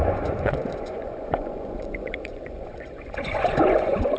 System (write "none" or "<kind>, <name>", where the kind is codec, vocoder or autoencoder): vocoder, Vocos